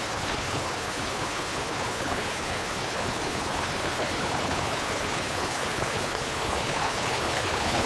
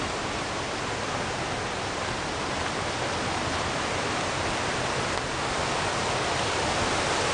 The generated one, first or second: first